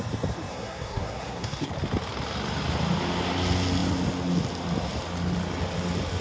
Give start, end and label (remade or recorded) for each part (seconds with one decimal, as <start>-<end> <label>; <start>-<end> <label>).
0.0-0.5 recorded; 0.5-1.7 remade; 1.7-6.2 recorded

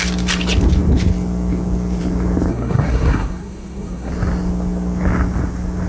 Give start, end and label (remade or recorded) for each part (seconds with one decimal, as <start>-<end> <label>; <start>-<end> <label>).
0.0-2.5 recorded; 2.5-4.1 remade; 4.1-5.9 recorded